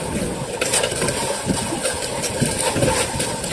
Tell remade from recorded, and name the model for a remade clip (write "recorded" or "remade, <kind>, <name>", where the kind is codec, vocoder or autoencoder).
recorded